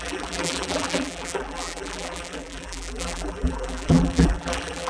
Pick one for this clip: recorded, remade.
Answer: remade